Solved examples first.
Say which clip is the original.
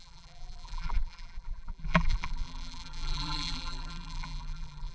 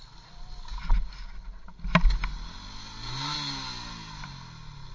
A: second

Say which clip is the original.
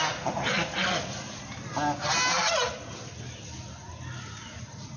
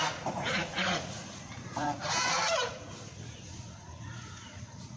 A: first